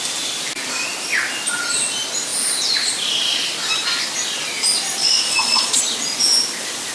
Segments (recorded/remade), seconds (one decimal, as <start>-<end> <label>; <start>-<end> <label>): 0.0-5.0 recorded; 5.0-5.8 remade; 5.8-6.9 recorded